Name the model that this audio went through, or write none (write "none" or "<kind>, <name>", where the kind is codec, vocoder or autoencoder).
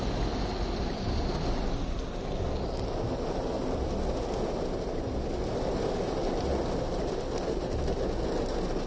none